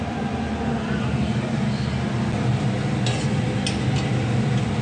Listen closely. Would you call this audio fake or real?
real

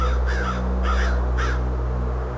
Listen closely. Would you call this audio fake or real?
real